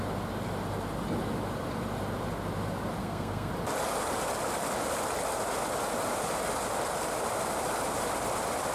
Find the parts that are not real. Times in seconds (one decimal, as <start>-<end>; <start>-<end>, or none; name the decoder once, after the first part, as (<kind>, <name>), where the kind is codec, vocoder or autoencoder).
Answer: 3.0-3.5 (codec, SNAC)